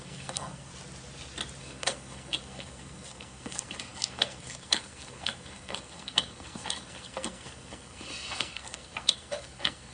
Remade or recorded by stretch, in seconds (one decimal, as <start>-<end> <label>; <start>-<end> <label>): 0.0-0.7 remade; 0.7-1.6 recorded; 1.6-9.9 remade